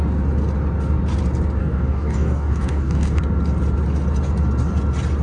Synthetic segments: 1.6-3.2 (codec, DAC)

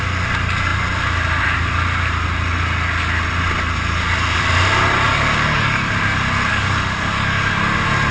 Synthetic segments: 5.1-5.9 (codec, DAC); 6.5-7.5

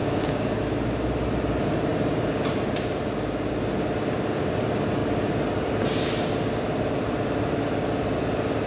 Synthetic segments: 0.0-0.6 (codec, DAC)